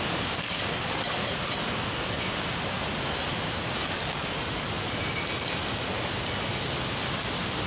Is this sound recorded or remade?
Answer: recorded